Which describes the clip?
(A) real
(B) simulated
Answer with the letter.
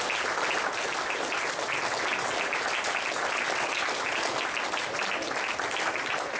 A